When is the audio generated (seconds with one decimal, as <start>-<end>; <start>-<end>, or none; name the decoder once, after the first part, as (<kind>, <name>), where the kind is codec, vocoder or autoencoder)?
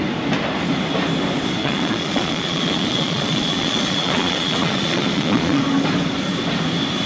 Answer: 1.6-5.6 (vocoder, Vocos)